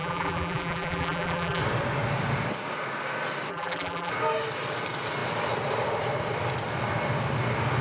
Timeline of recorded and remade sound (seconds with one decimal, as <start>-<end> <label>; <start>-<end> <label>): 0.0-1.6 remade; 1.6-3.5 recorded; 3.5-4.1 remade; 4.1-7.8 recorded